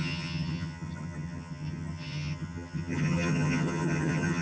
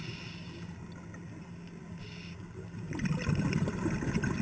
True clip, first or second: second